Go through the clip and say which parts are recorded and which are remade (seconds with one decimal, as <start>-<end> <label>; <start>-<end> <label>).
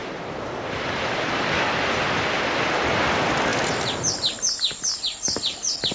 0.0-1.6 remade; 1.6-5.9 recorded